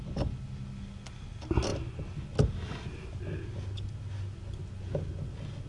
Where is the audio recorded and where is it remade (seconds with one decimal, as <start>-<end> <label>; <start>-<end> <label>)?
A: 0.0-5.7 recorded